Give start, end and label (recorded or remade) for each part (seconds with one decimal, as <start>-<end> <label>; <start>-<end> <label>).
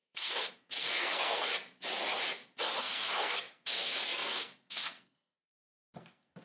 0.0-1.5 remade; 1.5-2.8 recorded; 2.8-6.4 remade